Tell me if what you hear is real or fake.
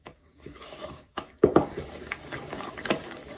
fake